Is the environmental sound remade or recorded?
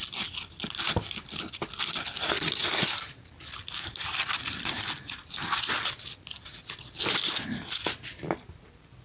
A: recorded